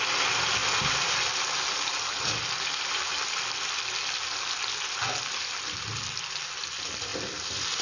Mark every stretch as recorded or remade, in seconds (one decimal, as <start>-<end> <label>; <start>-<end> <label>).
0.0-7.1 recorded; 7.1-7.8 remade